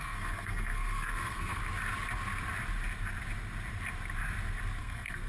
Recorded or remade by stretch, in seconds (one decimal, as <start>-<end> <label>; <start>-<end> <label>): 0.0-1.6 remade; 1.6-4.8 recorded; 4.8-5.3 remade